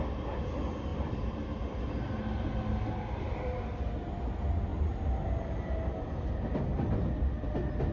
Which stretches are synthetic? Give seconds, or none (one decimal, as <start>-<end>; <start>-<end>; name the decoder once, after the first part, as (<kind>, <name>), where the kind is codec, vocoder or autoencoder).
0.9-1.8 (vocoder, BigVGAN v2)